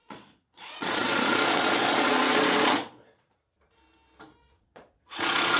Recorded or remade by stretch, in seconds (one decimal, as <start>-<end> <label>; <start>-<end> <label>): 0.0-3.4 remade; 3.4-4.4 recorded; 4.4-5.6 remade

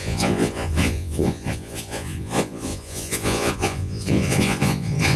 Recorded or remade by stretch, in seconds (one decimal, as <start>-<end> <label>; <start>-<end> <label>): 0.0-5.2 remade

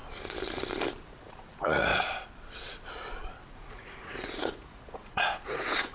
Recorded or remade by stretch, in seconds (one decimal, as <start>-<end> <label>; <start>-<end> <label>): 0.0-1.0 recorded; 1.0-1.9 remade; 1.9-3.4 recorded; 3.4-5.9 remade

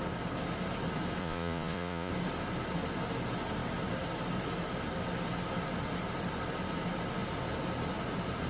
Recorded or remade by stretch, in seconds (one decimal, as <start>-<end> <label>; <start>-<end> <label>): 0.0-1.2 recorded; 1.2-2.1 remade; 2.1-8.5 recorded

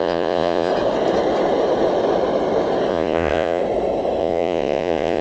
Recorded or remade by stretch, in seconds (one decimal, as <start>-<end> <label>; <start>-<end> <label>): 0.0-0.7 remade; 0.7-2.9 recorded; 2.9-3.6 remade; 3.6-4.2 recorded; 4.2-5.2 remade

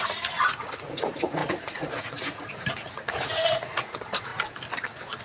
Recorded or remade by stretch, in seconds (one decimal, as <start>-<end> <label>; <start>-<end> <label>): 0.0-4.3 remade; 4.3-5.2 recorded

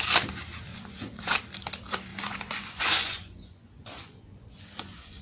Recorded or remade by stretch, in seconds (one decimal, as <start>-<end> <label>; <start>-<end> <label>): 0.0-0.7 recorded; 0.7-1.4 remade; 1.4-2.1 recorded; 2.1-5.2 remade